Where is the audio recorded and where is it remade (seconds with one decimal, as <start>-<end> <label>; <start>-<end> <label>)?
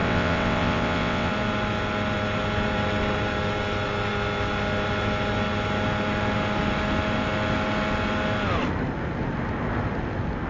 0.0-1.3 remade; 1.3-10.5 recorded